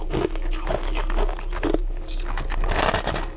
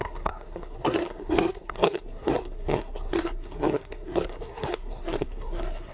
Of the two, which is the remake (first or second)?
second